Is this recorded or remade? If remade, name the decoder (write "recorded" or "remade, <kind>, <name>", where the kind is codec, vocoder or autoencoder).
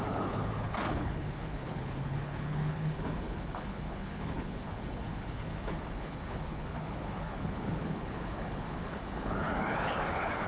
remade, codec, HILCodec